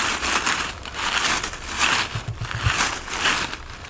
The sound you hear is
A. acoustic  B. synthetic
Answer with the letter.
A